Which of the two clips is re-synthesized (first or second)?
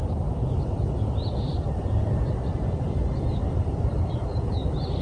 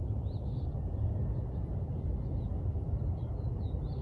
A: first